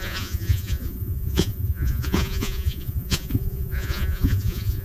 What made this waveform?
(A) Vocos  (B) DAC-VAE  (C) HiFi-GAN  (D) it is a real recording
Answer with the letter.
A